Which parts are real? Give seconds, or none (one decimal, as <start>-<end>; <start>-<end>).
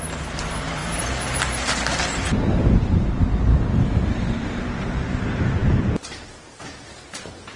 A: none